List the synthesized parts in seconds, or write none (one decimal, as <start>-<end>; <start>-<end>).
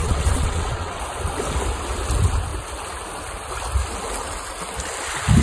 0.0-1.0